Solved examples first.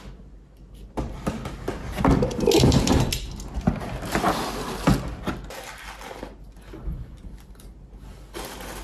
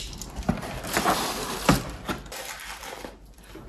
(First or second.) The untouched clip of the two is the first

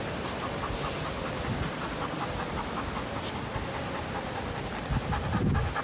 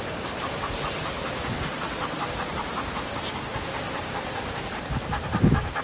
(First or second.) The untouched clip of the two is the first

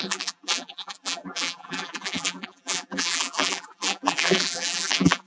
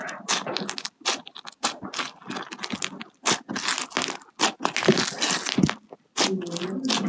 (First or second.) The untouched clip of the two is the second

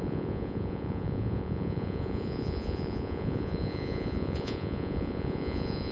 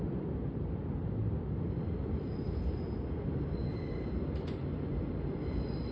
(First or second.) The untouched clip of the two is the second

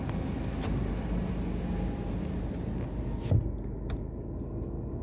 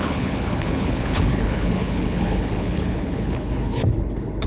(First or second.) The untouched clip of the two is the first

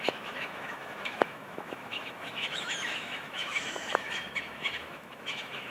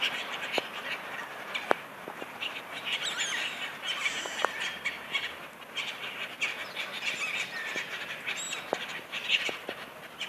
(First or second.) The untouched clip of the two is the second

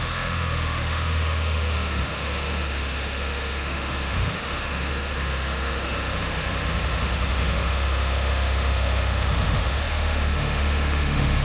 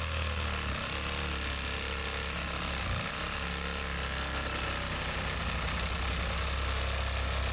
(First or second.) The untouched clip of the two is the second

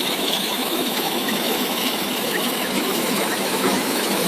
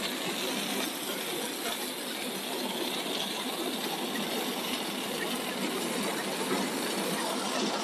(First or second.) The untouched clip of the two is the second